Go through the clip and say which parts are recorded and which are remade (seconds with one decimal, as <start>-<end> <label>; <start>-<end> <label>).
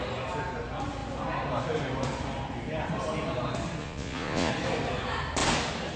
0.0-3.8 recorded; 3.8-4.5 remade; 4.5-6.0 recorded